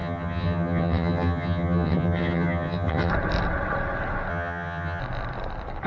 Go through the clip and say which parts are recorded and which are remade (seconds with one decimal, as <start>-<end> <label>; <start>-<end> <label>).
0.0-3.1 remade; 3.1-4.3 recorded; 4.3-5.0 remade; 5.0-5.9 recorded

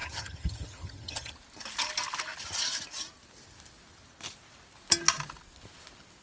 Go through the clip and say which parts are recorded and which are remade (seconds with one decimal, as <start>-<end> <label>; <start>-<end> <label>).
0.0-1.3 remade; 1.3-6.2 recorded

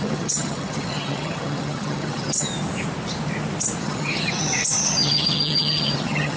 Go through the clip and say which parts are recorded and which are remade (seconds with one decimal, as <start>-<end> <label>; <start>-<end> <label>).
0.0-2.5 remade; 2.5-3.8 recorded; 3.8-6.4 remade

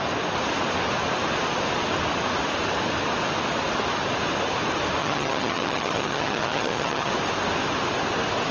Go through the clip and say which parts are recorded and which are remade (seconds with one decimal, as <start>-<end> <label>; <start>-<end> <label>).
0.0-5.0 recorded; 5.0-7.1 remade; 7.1-8.5 recorded